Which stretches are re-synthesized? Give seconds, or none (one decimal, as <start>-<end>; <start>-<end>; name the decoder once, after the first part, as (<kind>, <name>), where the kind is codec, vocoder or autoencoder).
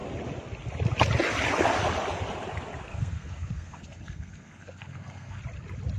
2.9-5.4 (codec, SNAC)